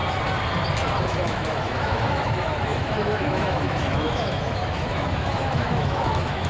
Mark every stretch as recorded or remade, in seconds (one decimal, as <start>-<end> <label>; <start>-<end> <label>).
0.0-1.0 recorded; 1.0-6.5 remade